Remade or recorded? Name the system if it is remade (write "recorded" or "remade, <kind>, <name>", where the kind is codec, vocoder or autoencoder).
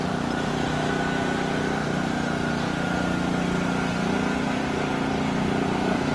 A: recorded